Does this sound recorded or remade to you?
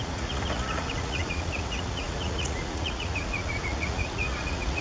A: remade